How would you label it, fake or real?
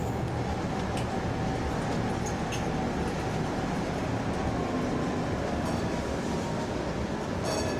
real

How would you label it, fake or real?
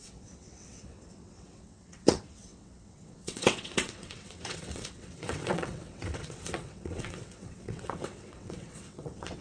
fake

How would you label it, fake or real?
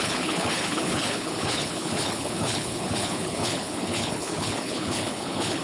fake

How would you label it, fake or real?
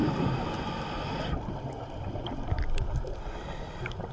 real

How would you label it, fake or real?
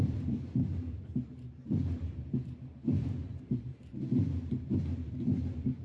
fake